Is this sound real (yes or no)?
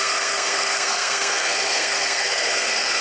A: no